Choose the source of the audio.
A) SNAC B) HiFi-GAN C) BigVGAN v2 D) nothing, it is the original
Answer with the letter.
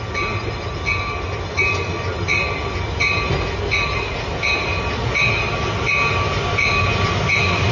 D